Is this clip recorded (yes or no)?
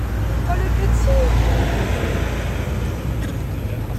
yes